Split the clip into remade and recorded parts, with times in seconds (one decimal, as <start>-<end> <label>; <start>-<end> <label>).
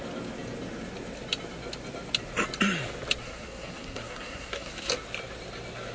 0.0-3.2 recorded; 3.2-4.9 remade; 4.9-5.9 recorded